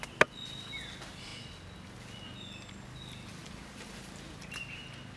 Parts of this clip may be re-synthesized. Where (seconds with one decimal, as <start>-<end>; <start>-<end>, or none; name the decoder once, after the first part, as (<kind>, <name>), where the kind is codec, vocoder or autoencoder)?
3.4-4.6 (vocoder, BigVGAN v2)